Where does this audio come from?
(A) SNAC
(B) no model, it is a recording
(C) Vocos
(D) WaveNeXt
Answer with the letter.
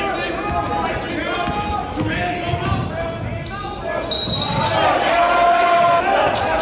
B